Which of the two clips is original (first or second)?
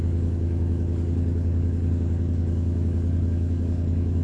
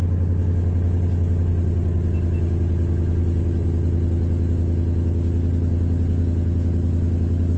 second